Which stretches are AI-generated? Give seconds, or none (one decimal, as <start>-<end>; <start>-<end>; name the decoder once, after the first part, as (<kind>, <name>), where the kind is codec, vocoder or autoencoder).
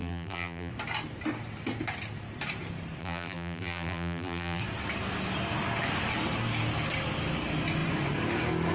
0.0-0.7 (vocoder, BigVGAN v2); 3.0-4.6